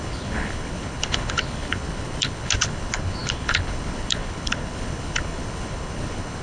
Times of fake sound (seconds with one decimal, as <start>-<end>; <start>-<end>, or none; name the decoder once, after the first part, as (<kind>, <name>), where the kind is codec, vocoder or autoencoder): 0.0-6.4 (codec, HILCodec)